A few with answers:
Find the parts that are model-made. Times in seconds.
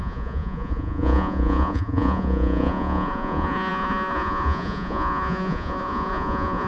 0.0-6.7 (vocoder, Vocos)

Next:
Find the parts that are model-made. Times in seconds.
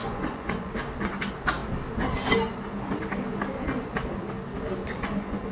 0.0-0.7 (vocoder, Vocos); 4.8-5.5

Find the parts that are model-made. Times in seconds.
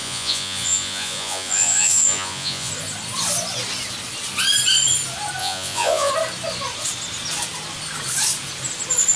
0.0-2.7 (vocoder, Vocos); 5.4-6.1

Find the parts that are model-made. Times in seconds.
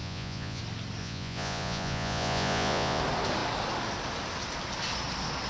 0.0-0.6 (vocoder, Vocos); 1.0-3.0